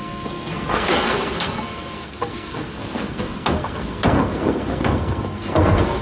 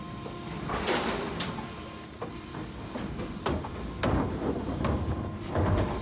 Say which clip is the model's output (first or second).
first